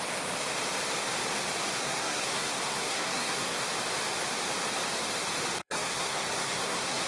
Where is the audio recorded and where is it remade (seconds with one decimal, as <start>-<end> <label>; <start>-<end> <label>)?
0.0-1.8 recorded; 1.8-3.6 remade; 3.6-5.6 recorded; 5.6-7.1 remade